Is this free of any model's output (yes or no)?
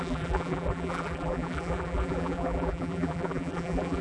no